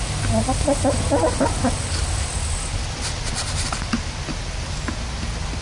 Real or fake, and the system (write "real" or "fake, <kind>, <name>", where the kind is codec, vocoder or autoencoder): real